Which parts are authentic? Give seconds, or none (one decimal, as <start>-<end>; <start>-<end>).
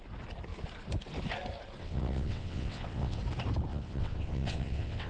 0.0-1.8; 3.2-3.7